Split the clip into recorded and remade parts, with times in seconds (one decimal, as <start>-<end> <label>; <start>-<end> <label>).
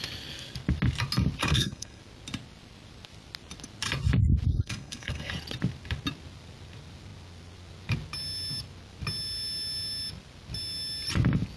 0.0-1.4 recorded; 1.4-2.0 remade; 2.0-4.5 recorded; 4.5-5.3 remade; 5.3-11.6 recorded